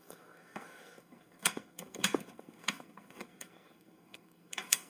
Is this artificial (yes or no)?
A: yes